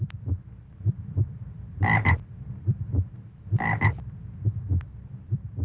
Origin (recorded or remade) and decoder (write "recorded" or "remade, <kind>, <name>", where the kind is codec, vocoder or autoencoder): recorded